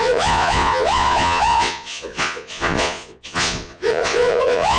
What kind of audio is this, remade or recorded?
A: remade